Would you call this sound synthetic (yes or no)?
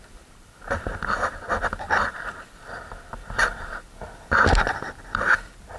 yes